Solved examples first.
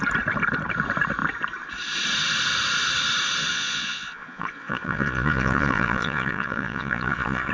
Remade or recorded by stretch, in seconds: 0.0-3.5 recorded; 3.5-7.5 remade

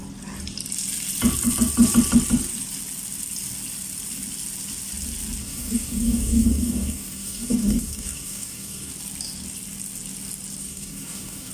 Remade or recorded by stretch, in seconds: 0.0-5.4 recorded; 5.4-8.9 remade; 8.9-10.6 recorded; 10.6-11.5 remade

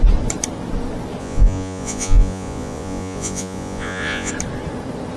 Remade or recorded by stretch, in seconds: 0.0-1.2 recorded; 1.2-4.3 remade; 4.3-5.2 recorded

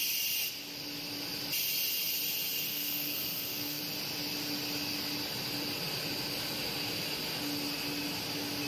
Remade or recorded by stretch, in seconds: 0.0-2.7 recorded; 2.7-3.8 remade; 3.8-8.7 recorded

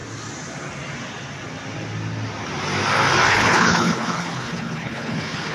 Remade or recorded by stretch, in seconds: 0.0-3.3 recorded; 3.3-5.5 remade

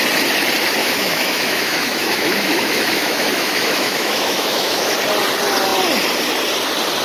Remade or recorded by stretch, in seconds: 0.0-0.8 recorded; 0.8-5.0 remade; 5.0-7.0 recorded

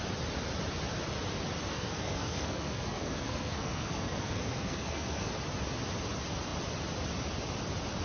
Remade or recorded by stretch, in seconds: 0.0-1.7 recorded; 1.7-5.3 remade; 5.3-8.0 recorded

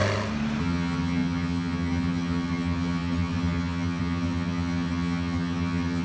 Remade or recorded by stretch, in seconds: 0.0-0.6 recorded; 0.6-6.0 remade